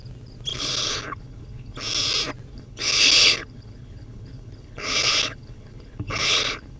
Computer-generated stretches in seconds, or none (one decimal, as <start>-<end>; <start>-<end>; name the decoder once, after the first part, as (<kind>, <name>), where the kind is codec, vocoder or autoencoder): 0.5-1.8 (codec, HILCodec); 2.5-6.8